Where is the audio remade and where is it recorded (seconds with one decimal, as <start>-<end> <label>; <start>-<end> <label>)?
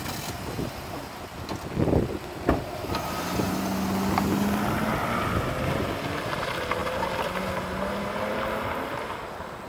0.0-9.7 recorded